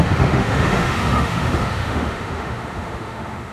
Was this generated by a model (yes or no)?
yes